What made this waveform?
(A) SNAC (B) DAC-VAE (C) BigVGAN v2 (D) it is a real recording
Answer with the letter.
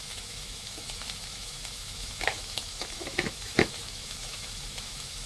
B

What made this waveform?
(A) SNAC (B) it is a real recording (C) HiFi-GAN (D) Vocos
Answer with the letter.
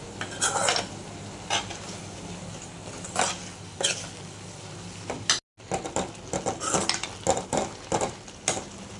B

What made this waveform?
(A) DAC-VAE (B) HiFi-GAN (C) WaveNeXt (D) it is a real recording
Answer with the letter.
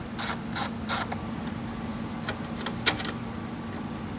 D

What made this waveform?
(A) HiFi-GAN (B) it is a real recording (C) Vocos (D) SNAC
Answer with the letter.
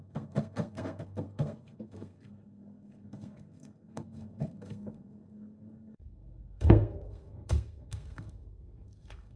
D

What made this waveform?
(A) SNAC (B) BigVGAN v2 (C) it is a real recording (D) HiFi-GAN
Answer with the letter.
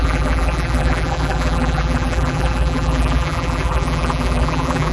B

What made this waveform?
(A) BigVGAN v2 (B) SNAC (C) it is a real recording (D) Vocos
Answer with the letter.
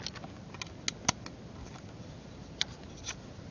C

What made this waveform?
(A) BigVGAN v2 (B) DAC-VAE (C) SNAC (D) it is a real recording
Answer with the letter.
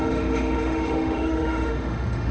B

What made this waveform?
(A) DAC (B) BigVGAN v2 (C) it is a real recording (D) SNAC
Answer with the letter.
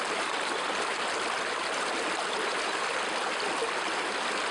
C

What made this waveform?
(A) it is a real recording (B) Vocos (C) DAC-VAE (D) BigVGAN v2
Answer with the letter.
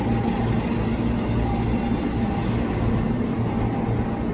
A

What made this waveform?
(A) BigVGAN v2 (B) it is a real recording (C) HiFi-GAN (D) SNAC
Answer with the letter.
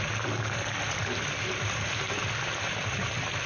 B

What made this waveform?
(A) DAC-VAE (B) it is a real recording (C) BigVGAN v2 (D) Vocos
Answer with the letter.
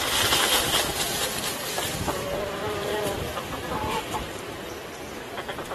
C